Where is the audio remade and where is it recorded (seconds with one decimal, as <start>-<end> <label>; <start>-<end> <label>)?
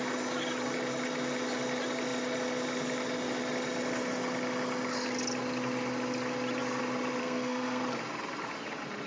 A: 0.0-7.2 recorded; 7.2-7.8 remade; 7.8-9.1 recorded